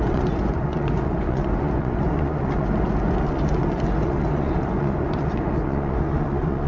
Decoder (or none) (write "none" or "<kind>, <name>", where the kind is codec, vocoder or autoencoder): vocoder, Vocos